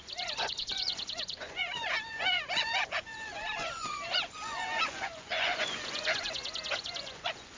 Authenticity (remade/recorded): remade